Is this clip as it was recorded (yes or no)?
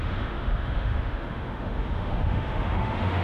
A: no